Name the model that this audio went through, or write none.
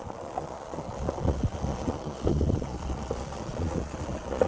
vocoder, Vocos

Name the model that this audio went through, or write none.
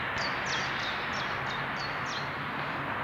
none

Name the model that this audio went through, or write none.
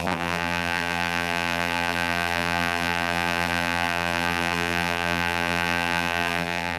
vocoder, BigVGAN v2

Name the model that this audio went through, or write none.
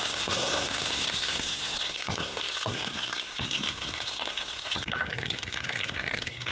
codec, SNAC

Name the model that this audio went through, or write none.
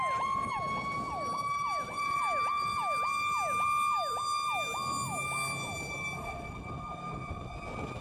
none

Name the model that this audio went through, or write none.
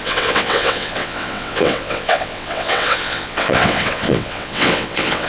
vocoder, WaveNeXt